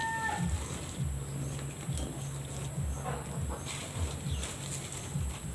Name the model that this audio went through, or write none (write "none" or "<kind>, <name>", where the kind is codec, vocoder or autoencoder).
none